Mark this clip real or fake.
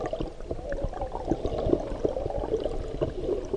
real